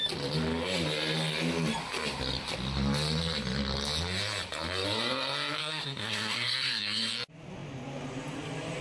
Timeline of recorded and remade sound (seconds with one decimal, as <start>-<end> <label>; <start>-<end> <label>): 0.0-5.6 recorded; 5.6-7.1 remade; 7.1-8.8 recorded